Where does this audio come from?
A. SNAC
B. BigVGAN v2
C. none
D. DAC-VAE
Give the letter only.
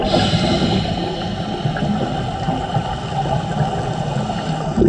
C